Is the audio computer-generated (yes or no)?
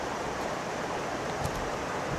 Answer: no